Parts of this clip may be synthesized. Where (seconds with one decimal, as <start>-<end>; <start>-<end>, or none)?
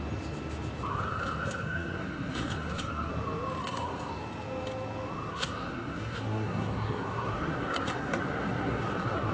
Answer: 0.9-3.1; 3.6-4.1; 5.3-9.3